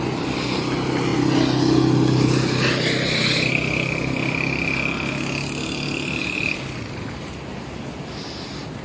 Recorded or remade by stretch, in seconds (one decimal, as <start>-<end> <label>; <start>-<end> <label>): 0.0-8.8 recorded